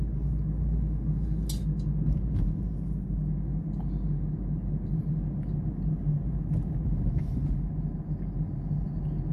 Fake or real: real